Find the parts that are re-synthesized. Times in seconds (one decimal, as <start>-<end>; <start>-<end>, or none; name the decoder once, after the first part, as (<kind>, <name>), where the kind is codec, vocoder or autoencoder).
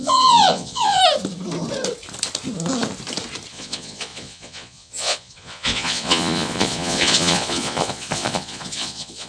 0.0-1.0 (vocoder, Vocos); 3.5-9.3